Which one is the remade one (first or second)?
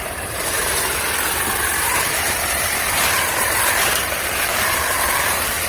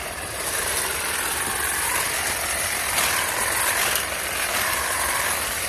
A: first